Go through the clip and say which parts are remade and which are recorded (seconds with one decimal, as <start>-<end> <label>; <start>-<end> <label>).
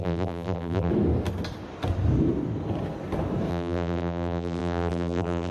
0.0-0.9 remade; 0.9-3.5 recorded; 3.5-5.5 remade